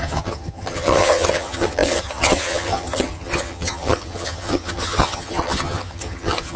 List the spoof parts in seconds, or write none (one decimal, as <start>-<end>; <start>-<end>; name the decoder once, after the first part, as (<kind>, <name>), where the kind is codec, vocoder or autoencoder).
0.0-6.6 (vocoder, HiFi-GAN)